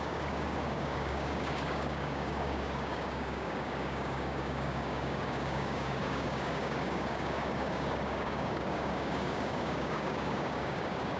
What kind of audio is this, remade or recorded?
remade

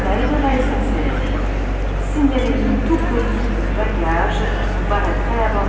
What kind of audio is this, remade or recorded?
recorded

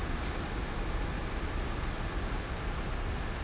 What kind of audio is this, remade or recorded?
recorded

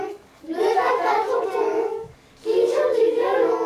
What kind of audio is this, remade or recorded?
remade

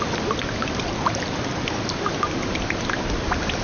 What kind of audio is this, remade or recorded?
recorded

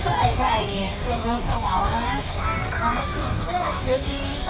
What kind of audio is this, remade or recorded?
remade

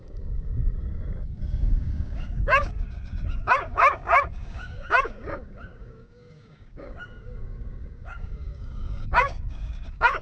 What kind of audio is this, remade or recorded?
remade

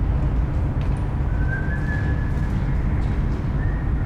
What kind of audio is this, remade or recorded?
recorded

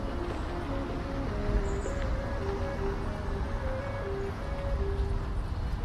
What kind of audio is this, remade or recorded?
recorded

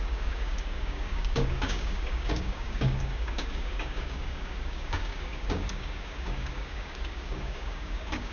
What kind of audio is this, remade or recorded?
remade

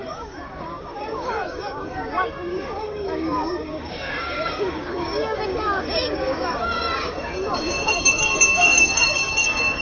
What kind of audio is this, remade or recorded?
remade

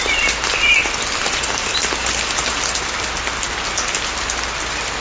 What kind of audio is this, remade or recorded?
recorded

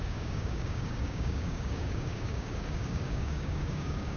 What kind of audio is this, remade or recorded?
remade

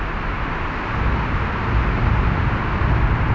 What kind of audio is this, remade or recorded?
recorded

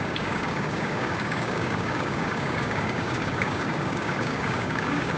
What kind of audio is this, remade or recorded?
remade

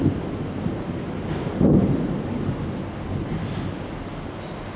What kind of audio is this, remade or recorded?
recorded